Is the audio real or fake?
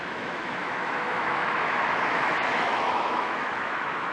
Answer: fake